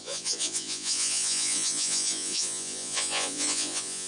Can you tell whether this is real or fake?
fake